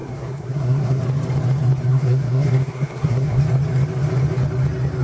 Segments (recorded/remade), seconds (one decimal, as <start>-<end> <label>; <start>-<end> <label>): 0.0-1.0 remade; 1.0-1.9 recorded; 1.9-3.4 remade; 3.4-5.0 recorded